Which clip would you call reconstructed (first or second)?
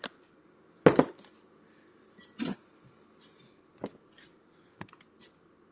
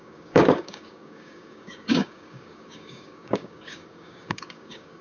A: second